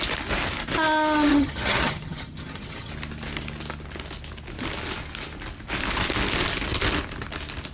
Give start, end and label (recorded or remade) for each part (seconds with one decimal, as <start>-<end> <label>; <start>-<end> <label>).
0.0-1.3 recorded; 1.3-2.9 remade; 2.9-7.7 recorded